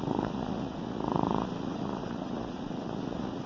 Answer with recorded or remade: remade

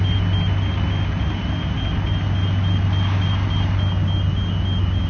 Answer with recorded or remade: recorded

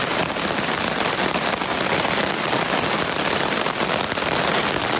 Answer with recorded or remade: recorded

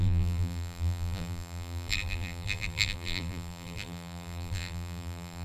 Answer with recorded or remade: remade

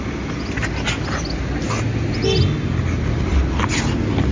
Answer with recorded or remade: recorded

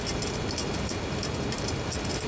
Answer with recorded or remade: recorded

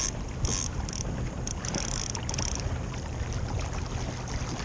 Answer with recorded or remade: recorded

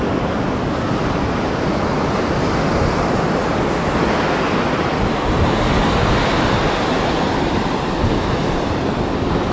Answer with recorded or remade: recorded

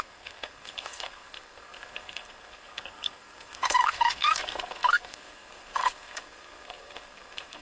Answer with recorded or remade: remade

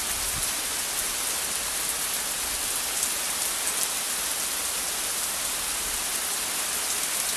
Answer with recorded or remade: recorded